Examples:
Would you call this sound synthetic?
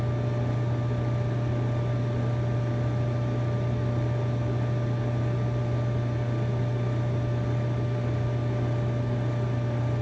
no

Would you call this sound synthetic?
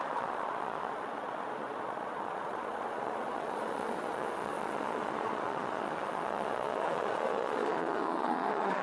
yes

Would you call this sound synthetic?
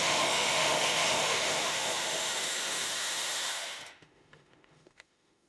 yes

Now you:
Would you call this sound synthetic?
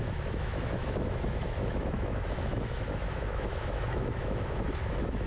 yes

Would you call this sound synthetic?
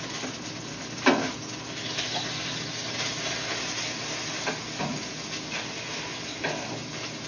no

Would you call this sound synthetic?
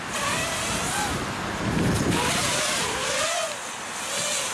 no